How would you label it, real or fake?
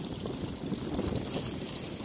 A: real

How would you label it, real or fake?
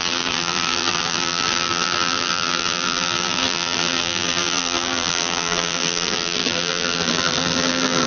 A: fake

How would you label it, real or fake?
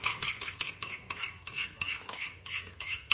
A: fake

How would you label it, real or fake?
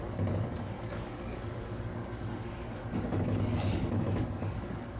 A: fake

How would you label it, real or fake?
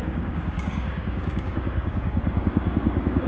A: fake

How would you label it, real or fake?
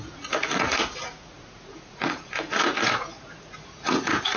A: fake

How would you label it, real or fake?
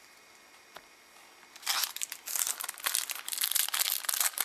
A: real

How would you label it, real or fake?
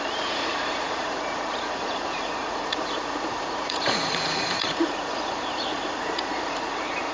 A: fake